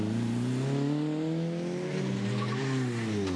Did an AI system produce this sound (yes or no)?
no